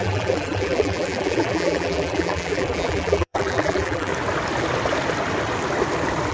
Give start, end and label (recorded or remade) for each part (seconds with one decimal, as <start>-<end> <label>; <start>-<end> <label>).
0.0-4.1 remade; 4.1-6.3 recorded